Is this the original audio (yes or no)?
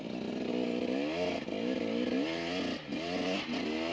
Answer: yes